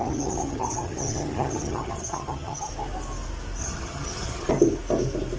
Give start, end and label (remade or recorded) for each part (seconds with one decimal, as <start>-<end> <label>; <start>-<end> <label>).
0.0-2.7 remade; 2.7-3.6 recorded; 3.6-4.5 remade; 4.5-5.4 recorded